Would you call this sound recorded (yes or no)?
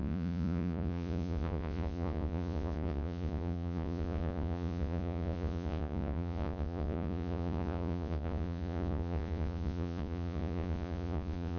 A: no